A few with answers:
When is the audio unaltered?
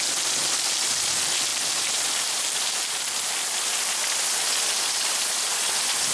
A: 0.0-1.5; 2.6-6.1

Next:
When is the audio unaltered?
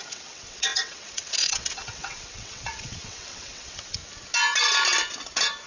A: 4.0-5.7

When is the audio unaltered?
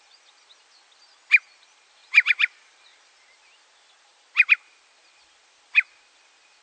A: 0.0-2.0; 3.1-4.1; 5.0-6.6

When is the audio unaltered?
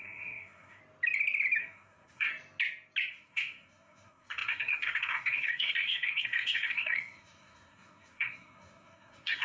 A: 0.8-1.6; 2.3-3.1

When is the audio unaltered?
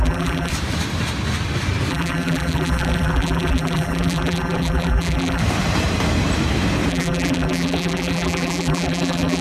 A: 0.5-1.9; 5.4-6.9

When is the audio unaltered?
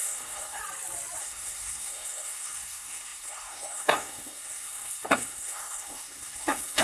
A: 0.6-1.2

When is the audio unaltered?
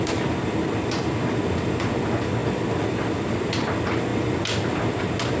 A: 0.0-5.4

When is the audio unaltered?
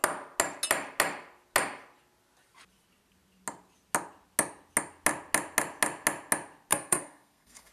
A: 0.0-6.7